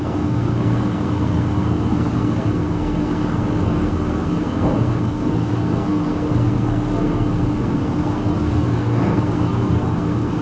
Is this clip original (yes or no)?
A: no